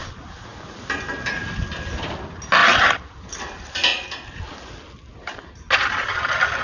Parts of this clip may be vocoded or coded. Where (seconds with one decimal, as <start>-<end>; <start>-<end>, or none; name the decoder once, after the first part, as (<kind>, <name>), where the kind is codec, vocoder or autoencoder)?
none